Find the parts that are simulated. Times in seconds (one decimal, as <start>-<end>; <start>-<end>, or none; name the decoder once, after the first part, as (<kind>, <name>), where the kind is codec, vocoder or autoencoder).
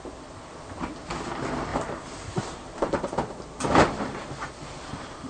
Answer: 1.7-5.3 (vocoder, BigVGAN v2)